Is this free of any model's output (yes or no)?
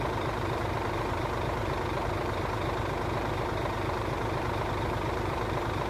no